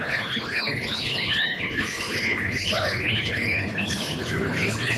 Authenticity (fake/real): fake